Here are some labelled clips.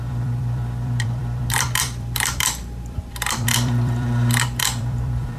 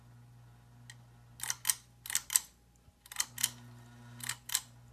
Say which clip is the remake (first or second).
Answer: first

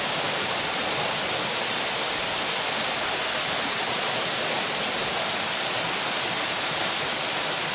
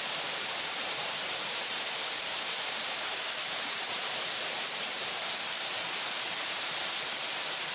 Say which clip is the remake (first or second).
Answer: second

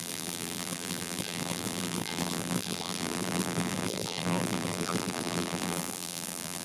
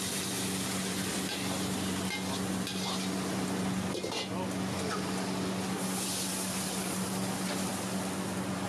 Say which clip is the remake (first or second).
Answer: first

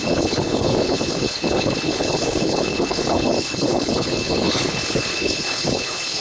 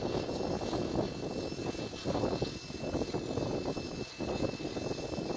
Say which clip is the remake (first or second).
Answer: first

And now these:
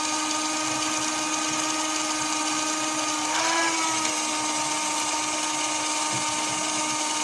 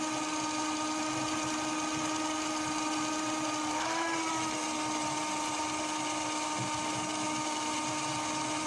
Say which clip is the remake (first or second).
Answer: second